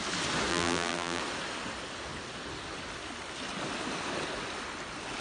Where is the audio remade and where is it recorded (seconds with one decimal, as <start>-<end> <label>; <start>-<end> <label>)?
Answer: 0.0-0.5 recorded; 0.5-1.2 remade; 1.2-5.2 recorded